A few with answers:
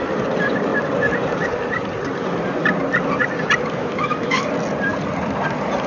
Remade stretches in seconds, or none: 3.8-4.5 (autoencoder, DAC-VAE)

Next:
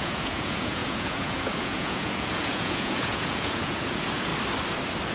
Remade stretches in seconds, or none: 0.0-4.3 (vocoder, Vocos)